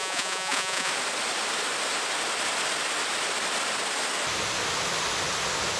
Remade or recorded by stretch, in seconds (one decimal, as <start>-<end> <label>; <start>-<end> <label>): 0.0-0.9 remade; 0.9-5.8 recorded